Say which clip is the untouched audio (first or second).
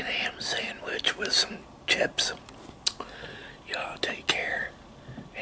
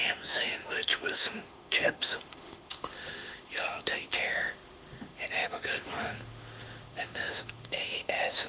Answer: first